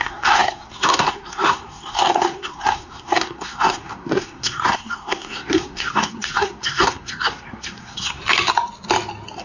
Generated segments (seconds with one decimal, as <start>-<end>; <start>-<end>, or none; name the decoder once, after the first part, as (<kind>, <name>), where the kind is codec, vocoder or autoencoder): 0.0-8.2 (codec, SNAC)